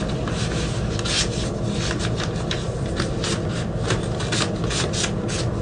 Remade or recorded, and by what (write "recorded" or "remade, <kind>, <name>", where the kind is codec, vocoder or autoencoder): recorded